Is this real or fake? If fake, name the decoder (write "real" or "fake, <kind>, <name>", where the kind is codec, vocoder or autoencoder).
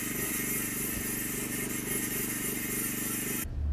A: real